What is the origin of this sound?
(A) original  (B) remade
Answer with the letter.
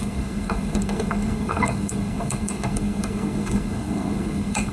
B